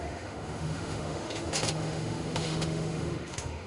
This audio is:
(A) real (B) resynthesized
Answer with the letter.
B